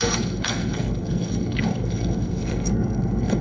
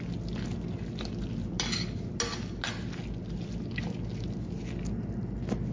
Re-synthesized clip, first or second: first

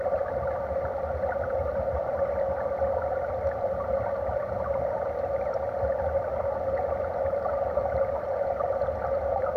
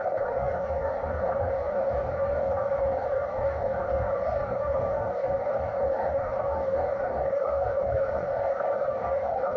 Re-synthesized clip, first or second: second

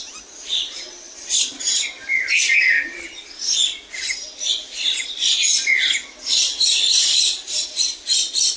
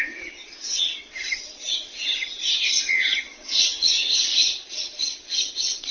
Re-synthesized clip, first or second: second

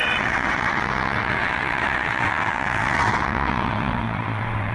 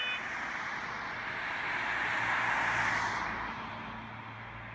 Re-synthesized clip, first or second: first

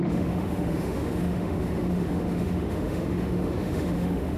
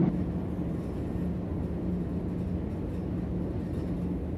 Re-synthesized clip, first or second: first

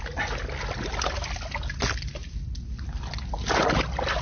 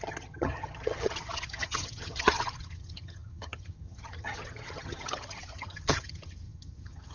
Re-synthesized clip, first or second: second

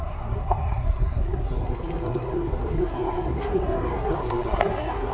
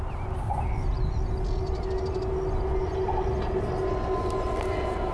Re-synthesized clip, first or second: first